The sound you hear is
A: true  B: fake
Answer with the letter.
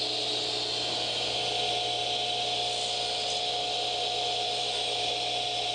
A